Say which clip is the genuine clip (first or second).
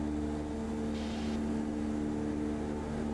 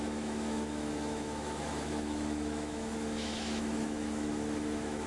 first